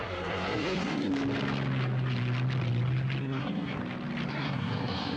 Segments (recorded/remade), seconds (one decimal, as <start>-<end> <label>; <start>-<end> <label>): 0.0-1.1 remade; 1.1-3.2 recorded; 3.2-3.8 remade; 3.8-4.3 recorded; 4.3-5.2 remade